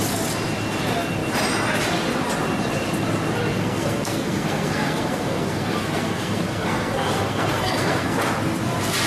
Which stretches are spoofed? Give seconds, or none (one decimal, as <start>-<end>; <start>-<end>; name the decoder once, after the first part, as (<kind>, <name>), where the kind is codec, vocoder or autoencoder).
3.5-8.3 (codec, SNAC)